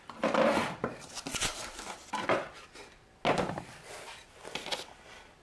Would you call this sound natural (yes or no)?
yes